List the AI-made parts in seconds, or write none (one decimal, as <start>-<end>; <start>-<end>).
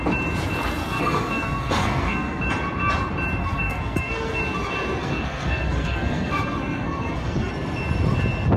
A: 0.8-2.4; 3.4-4.4; 5.0-7.5